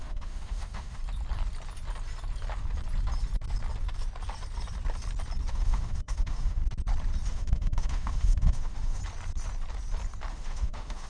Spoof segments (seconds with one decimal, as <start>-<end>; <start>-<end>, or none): 0.0-1.0; 5.5-6.6; 7.3-9.0; 10.3-11.1